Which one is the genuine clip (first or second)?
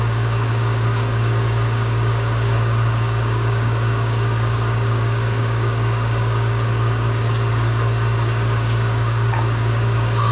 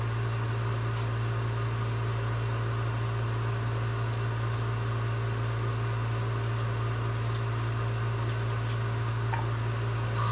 second